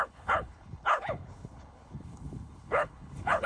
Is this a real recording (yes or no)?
no